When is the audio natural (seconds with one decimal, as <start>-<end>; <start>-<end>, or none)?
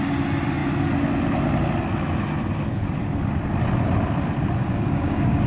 0.0-4.6